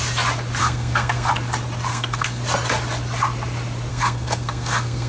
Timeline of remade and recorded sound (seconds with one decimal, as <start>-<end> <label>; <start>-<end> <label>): 0.0-0.6 recorded; 0.6-1.3 remade; 1.3-1.9 recorded; 1.9-2.4 remade; 2.4-3.9 recorded; 3.9-5.1 remade